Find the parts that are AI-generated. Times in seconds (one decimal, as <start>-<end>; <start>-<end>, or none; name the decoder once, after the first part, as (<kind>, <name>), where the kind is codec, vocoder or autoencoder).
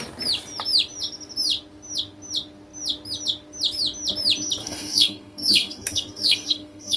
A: 4.6-7.0 (codec, SNAC)